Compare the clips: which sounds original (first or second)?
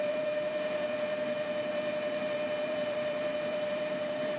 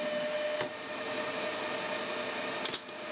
second